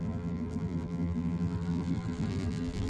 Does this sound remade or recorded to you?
remade